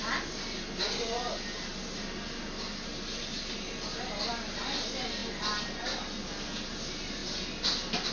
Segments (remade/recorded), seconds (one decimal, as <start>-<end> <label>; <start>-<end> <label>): 0.0-8.1 recorded